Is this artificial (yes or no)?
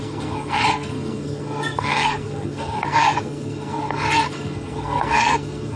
yes